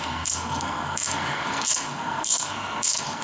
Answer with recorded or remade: remade